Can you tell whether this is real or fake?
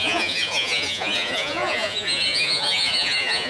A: fake